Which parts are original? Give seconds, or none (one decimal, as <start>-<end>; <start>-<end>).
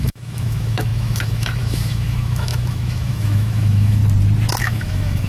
4.0-4.6